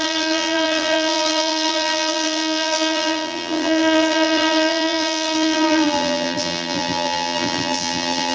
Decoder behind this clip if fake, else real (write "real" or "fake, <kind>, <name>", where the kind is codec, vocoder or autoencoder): fake, vocoder, BigVGAN v2